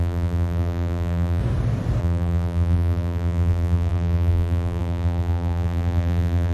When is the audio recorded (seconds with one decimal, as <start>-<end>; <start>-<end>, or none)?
1.4-2.0